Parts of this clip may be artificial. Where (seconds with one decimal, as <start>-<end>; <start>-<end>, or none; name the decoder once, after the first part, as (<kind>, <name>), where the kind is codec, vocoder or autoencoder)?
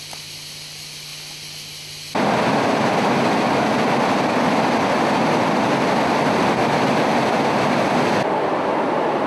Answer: none